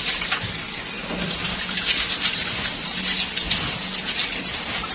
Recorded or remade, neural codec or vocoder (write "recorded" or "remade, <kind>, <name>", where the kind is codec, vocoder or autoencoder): recorded